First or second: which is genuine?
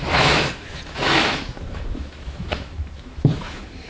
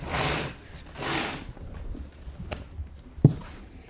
second